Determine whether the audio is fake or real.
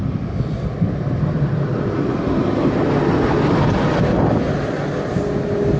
real